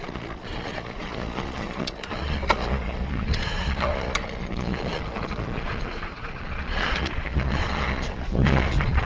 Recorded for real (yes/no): no